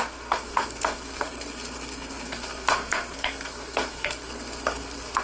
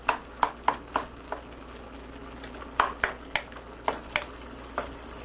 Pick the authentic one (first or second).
second